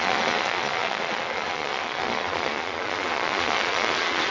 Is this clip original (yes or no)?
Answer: no